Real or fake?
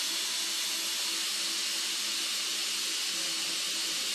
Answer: real